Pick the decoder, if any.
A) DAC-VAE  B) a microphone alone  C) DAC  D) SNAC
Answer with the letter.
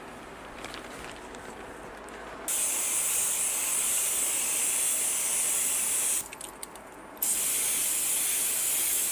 B